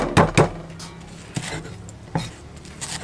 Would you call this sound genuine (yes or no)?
yes